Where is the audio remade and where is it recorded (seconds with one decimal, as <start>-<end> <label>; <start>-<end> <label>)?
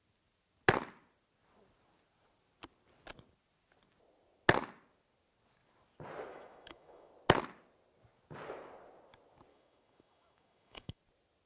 0.0-6.3 recorded; 6.3-7.1 remade; 7.1-9.5 recorded; 9.5-11.0 remade; 11.0-11.5 recorded